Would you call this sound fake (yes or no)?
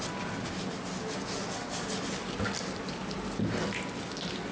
no